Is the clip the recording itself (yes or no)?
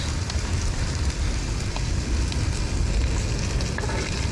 yes